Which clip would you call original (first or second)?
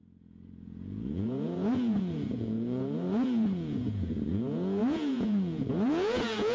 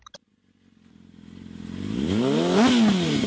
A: second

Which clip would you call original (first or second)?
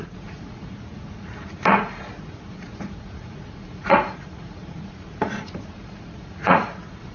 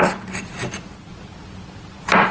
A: second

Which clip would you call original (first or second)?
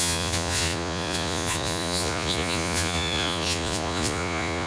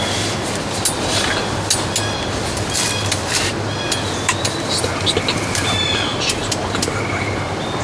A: second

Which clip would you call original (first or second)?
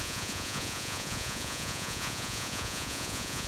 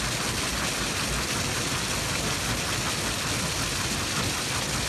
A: second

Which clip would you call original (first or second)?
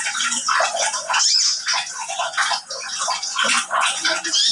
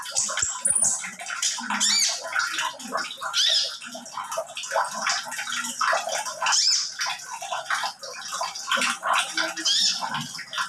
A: second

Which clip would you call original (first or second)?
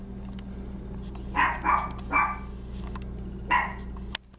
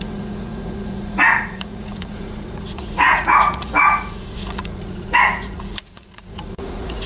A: first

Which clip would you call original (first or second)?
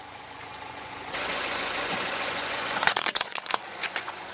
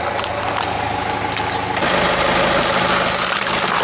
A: second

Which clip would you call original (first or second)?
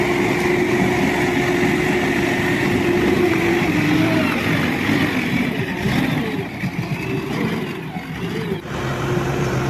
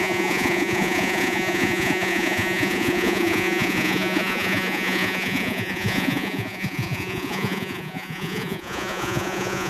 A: first